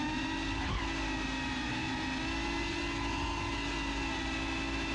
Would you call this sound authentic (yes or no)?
yes